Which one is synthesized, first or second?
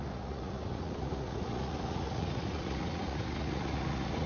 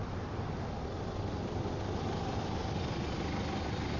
first